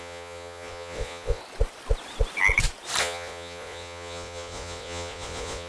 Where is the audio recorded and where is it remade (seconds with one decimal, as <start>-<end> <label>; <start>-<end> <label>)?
0.0-1.4 remade; 1.4-3.0 recorded; 3.0-5.7 remade